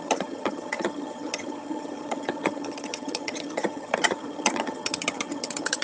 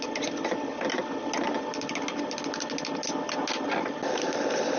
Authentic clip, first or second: second